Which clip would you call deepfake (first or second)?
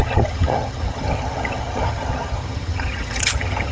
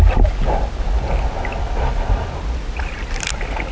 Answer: first